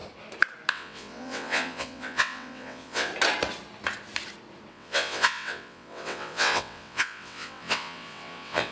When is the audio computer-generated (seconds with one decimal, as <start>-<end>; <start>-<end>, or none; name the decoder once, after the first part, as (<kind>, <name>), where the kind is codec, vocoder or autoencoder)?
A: 0.7-3.1 (vocoder, WaveNeXt); 4.7-8.7